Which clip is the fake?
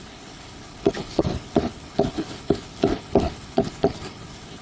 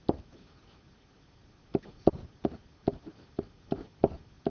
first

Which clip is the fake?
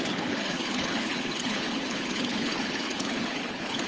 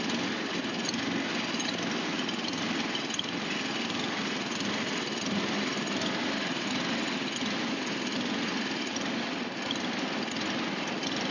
first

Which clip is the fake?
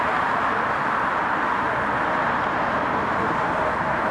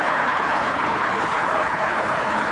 second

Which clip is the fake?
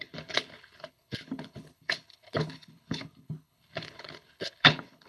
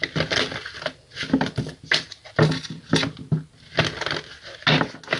first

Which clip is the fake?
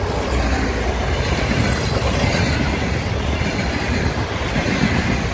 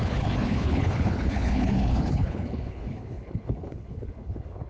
second